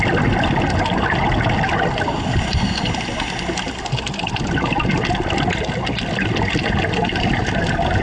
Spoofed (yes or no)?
no